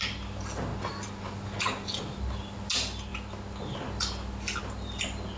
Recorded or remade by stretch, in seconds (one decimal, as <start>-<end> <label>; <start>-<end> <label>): 0.0-5.4 recorded